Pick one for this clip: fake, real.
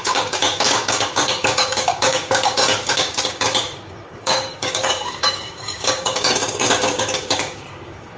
fake